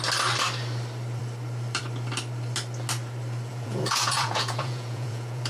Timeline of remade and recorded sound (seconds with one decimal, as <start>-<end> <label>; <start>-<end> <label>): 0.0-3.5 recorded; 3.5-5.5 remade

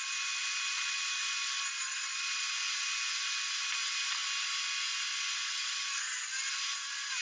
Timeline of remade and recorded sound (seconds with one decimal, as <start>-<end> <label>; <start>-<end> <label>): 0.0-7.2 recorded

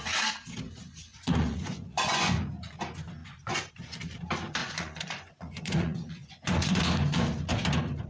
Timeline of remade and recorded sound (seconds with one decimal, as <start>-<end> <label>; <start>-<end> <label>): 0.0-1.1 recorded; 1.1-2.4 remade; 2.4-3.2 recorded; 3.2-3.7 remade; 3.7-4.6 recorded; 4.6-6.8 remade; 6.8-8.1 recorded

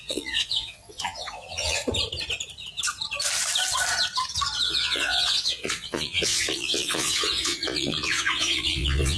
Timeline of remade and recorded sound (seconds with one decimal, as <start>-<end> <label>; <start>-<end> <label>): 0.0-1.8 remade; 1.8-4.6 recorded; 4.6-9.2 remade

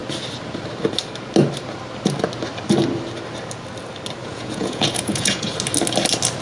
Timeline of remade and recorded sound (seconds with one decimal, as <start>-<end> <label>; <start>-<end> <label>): 0.0-4.2 recorded; 4.2-5.5 remade; 5.5-6.4 recorded

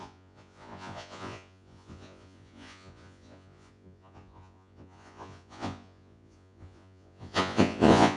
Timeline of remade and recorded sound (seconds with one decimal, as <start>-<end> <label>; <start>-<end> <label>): 0.0-8.2 remade

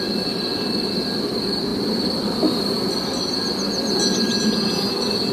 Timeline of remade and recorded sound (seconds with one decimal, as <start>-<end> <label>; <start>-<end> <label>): 0.0-5.3 recorded